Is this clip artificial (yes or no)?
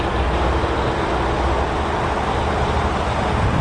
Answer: no